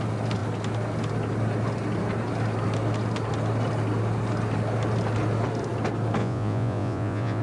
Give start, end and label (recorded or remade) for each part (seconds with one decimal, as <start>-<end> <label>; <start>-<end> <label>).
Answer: 0.0-6.2 recorded; 6.2-7.4 remade